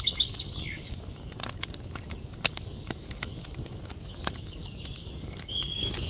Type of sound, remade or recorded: remade